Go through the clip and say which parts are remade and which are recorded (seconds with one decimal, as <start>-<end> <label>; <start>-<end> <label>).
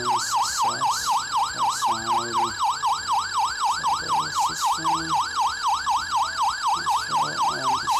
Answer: 0.0-8.0 recorded